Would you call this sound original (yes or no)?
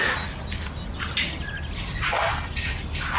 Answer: yes